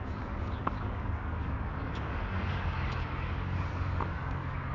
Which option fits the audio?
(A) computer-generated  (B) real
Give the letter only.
A